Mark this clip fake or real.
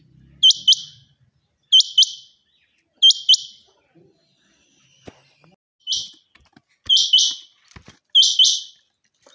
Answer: real